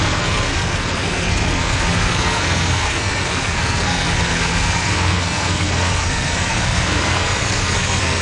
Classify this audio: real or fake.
fake